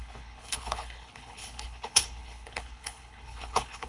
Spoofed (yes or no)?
yes